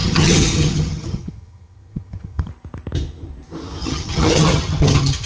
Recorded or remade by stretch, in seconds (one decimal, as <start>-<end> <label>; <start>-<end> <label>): 0.0-2.5 remade; 2.5-3.8 recorded; 3.8-5.3 remade